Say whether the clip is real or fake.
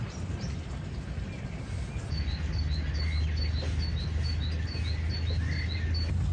real